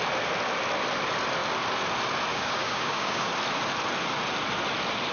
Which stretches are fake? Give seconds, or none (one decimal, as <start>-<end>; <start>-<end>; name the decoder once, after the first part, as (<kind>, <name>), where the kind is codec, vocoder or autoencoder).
2.3-3.3 (codec, DAC)